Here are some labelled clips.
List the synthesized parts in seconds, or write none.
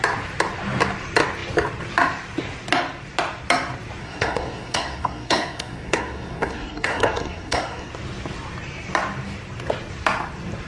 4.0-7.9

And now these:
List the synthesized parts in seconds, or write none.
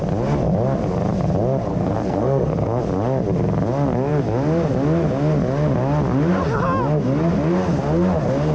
1.7-2.8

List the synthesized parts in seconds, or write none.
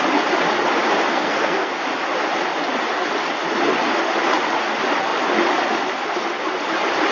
1.1-1.7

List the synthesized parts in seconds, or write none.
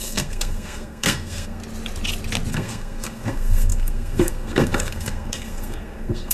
0.0-1.6; 2.5-6.3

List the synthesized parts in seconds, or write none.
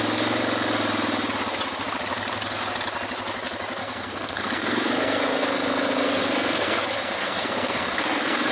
3.8-8.5